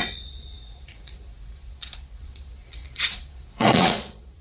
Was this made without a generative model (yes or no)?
no